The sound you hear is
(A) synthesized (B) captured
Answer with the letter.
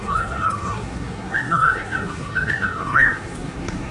A